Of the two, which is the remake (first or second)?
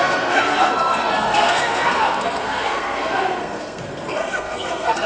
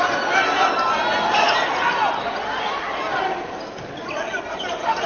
first